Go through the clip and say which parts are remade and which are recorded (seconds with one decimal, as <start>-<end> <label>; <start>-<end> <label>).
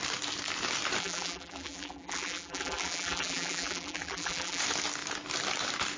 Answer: 0.0-1.0 recorded; 1.0-4.6 remade; 4.6-6.0 recorded